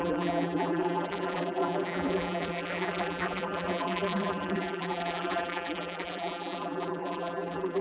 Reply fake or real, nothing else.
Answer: fake